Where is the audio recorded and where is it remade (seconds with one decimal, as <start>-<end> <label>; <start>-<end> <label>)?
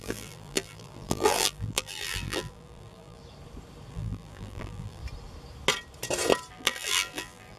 0.0-3.2 remade; 3.2-3.9 recorded; 3.9-5.0 remade; 5.0-6.5 recorded; 6.5-7.6 remade